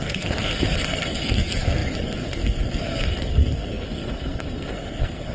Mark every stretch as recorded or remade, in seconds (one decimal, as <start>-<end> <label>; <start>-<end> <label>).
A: 0.0-5.3 remade